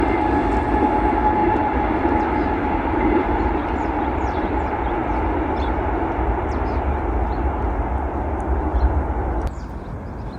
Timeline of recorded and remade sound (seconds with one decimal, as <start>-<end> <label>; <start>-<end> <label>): 0.0-1.4 recorded; 1.4-4.5 remade; 4.5-5.0 recorded; 5.0-6.6 remade; 6.6-8.7 recorded; 8.7-9.3 remade; 9.3-10.4 recorded